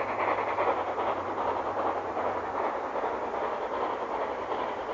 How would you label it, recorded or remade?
recorded